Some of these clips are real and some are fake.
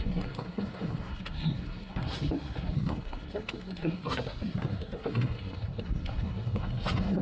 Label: fake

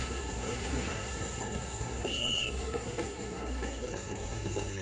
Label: fake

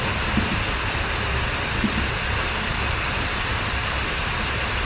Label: real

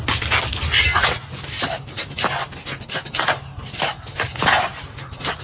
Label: real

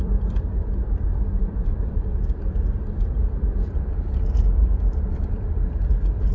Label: fake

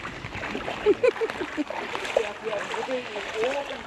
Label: real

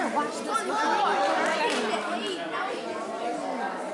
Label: real